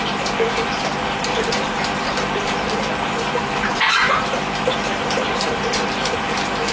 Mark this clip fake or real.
fake